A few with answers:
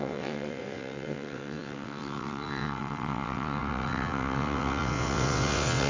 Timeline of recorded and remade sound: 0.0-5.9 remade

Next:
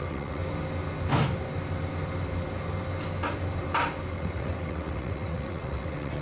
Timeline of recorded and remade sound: 0.0-0.4 remade; 0.4-4.1 recorded; 4.1-6.2 remade

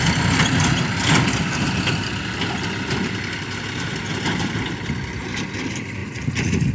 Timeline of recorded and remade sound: 0.0-6.0 recorded; 6.0-6.7 remade